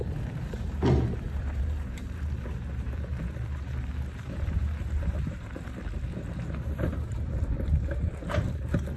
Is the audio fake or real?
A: fake